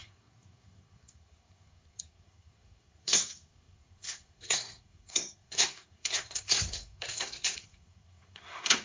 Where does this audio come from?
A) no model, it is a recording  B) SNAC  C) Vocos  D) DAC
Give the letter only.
B